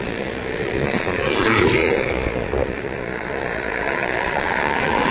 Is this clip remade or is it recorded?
remade